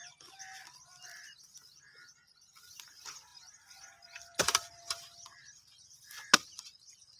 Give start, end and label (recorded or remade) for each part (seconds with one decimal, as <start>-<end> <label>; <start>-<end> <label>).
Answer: 0.0-3.3 recorded; 3.3-5.4 remade; 5.4-7.2 recorded